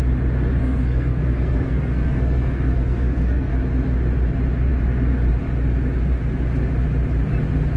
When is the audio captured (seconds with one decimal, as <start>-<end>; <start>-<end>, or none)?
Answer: 0.0-0.6; 3.5-7.8